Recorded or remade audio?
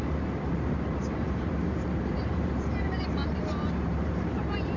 remade